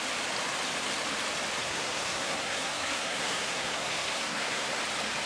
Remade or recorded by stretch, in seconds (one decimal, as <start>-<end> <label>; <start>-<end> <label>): 0.0-1.6 recorded; 1.6-4.8 remade; 4.8-5.3 recorded